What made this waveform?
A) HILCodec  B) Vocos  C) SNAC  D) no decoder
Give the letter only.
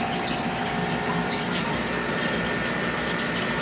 D